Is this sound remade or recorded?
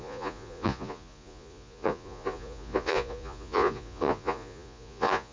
remade